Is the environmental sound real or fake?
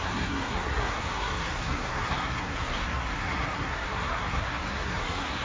fake